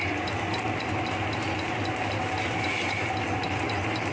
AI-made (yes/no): no